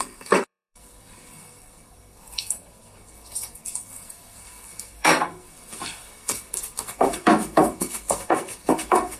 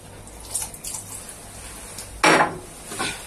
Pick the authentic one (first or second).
second